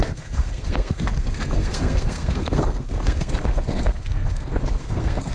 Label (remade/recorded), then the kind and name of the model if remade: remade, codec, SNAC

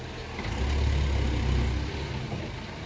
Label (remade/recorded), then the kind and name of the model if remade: recorded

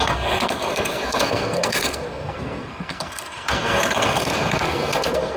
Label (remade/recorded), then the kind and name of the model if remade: remade, codec, SNAC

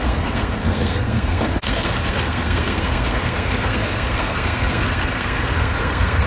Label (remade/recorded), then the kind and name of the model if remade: remade, codec, SNAC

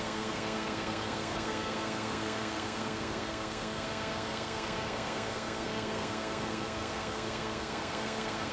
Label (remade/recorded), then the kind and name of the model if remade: remade, codec, SNAC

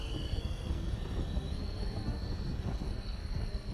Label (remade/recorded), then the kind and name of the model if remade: remade, codec, SNAC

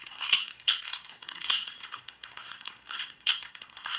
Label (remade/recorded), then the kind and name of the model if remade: remade, codec, SNAC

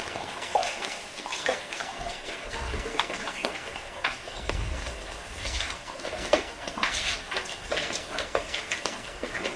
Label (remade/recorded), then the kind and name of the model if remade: remade, codec, SNAC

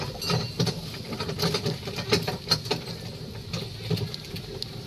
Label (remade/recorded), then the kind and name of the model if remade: recorded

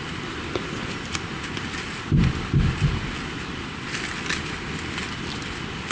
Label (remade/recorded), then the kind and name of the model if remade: recorded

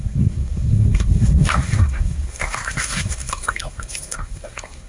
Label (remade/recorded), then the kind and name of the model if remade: remade, codec, SNAC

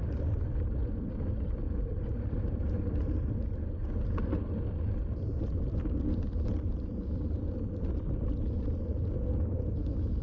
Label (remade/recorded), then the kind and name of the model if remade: recorded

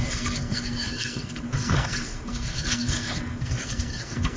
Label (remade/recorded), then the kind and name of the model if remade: remade, codec, SNAC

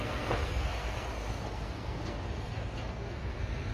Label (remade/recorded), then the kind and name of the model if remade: remade, codec, SNAC